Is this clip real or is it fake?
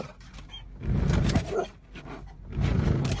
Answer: real